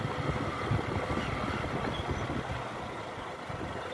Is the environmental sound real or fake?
real